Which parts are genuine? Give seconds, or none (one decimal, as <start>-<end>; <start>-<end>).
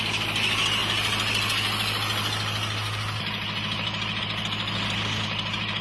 0.0-5.8